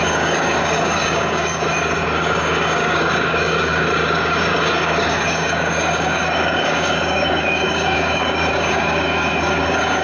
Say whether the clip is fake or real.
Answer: fake